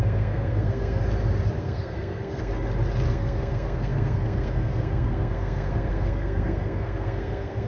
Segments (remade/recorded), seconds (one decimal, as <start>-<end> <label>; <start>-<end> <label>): 0.0-1.0 remade; 1.0-1.6 recorded; 1.6-2.5 remade; 2.5-3.1 recorded; 3.1-7.7 remade